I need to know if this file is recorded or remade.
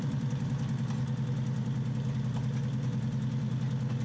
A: recorded